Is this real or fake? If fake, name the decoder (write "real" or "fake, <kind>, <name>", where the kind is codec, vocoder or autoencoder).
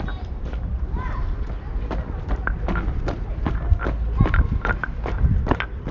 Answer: fake, vocoder, BigVGAN v2